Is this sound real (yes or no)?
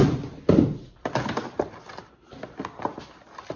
yes